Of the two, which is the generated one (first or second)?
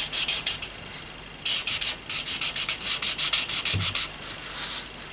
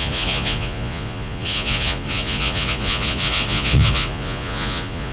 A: second